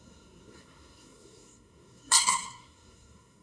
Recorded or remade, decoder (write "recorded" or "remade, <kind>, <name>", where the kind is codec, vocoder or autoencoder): remade, codec, SNAC